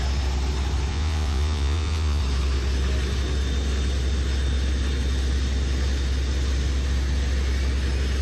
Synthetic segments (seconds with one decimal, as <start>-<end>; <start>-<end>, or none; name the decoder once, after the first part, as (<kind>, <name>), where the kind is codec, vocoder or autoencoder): 0.9-2.2 (vocoder, Vocos)